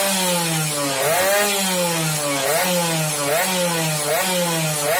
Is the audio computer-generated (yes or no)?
no